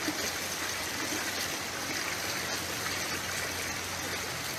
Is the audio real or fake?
real